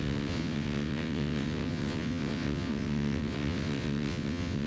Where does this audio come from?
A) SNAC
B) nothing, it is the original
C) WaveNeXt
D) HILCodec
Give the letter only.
C